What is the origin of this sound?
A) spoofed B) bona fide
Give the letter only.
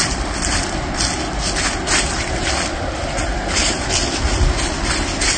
B